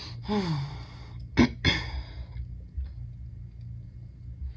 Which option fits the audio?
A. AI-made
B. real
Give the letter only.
B